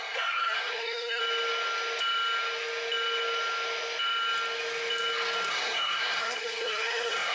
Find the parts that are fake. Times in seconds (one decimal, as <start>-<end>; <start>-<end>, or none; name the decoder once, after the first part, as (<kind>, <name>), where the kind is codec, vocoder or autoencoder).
0.0-1.2 (codec, SNAC); 5.5-7.3